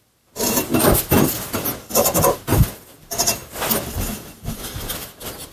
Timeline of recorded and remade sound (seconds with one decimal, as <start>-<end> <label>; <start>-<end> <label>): 0.0-0.7 remade; 0.7-1.9 recorded; 1.9-5.5 remade